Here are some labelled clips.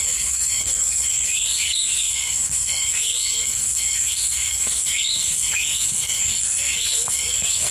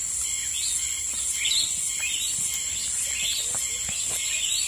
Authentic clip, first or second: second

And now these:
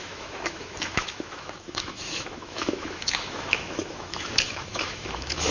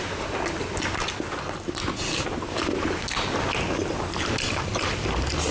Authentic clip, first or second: second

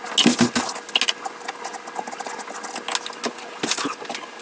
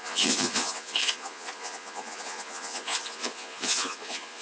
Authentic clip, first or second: first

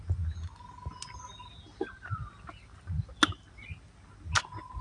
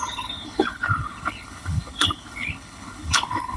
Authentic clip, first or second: first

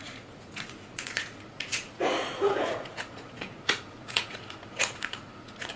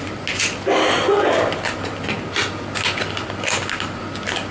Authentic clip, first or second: second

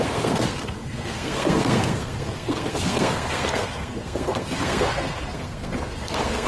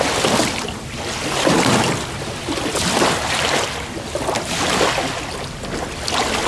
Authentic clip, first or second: second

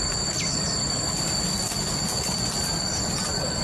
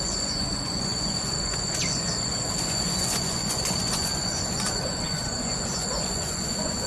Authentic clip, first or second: first